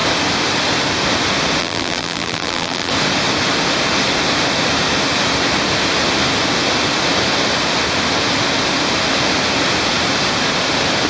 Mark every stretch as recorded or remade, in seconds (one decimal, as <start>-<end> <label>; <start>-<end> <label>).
0.0-1.6 recorded; 1.6-2.9 remade; 2.9-11.1 recorded